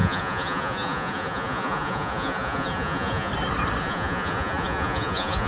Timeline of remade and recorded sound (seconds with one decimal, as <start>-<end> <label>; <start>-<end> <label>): 0.0-3.3 remade; 3.3-3.8 recorded; 3.8-5.5 remade